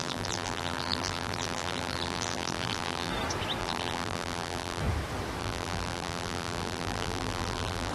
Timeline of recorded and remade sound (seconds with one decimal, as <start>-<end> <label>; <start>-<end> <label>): 0.0-3.1 remade; 3.1-3.6 recorded; 3.6-4.8 remade; 4.8-5.4 recorded; 5.4-7.9 remade

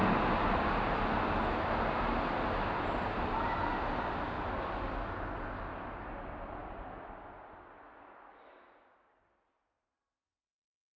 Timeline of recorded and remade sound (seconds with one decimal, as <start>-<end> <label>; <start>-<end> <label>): 0.0-1.0 remade; 1.0-11.0 recorded

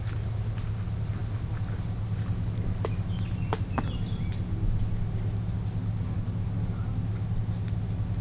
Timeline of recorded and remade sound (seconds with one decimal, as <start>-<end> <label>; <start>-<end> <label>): 0.0-8.2 recorded

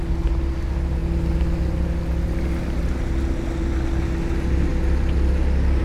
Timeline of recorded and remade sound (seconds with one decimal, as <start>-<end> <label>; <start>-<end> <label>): 0.0-5.8 recorded